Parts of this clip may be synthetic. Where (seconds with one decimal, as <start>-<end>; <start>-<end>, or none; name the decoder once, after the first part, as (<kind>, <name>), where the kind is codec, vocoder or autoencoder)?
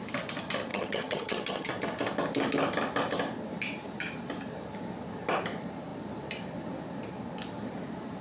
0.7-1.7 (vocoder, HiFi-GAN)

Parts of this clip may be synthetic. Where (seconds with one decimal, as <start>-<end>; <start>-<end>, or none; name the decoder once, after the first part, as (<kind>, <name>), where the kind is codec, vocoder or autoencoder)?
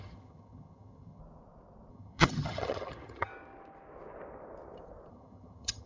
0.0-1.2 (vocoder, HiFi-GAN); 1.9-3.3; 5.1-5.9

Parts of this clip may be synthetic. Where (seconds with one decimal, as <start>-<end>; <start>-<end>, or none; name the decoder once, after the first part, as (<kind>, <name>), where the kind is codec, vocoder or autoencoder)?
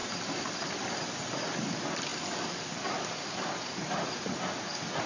none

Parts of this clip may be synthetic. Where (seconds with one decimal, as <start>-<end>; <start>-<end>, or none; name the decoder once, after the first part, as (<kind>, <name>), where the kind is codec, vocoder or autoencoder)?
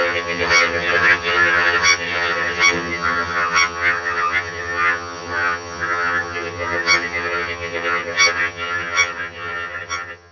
0.0-10.3 (vocoder, HiFi-GAN)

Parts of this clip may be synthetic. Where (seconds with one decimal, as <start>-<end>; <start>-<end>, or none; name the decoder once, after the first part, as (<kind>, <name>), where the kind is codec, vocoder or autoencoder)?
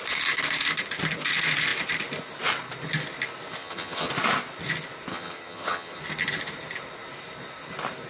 3.6-4.1 (vocoder, HiFi-GAN); 5.1-6.0